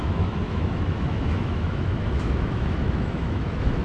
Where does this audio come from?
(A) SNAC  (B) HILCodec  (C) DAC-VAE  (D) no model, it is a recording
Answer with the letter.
C